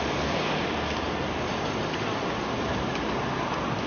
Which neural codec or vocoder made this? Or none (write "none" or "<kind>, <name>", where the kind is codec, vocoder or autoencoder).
none